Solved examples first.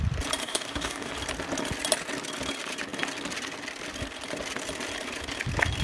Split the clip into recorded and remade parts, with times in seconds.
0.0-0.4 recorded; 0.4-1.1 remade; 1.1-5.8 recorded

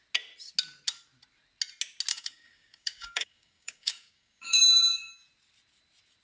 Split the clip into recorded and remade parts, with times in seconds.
0.0-2.1 recorded; 2.1-5.1 remade; 5.1-6.2 recorded